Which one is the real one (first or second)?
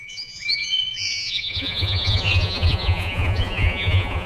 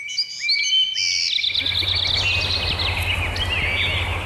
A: second